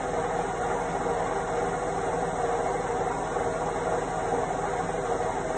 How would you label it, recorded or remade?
recorded